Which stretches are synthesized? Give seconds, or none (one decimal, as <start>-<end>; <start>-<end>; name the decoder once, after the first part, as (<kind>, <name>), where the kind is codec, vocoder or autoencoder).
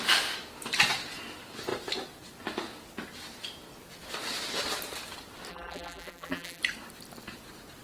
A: 5.5-6.6 (vocoder, BigVGAN v2)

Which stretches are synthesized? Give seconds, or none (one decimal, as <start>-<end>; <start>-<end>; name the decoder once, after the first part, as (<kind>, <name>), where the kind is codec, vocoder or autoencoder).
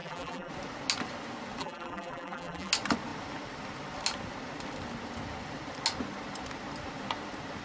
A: 0.0-0.5 (vocoder, BigVGAN v2); 1.6-2.7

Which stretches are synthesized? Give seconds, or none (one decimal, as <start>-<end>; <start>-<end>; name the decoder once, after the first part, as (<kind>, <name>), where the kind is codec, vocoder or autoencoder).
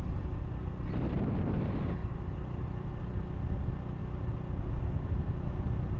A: 2.0-2.9 (vocoder, BigVGAN v2)